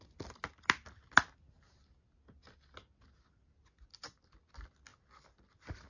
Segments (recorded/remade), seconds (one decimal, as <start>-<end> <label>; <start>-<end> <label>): 0.0-5.9 recorded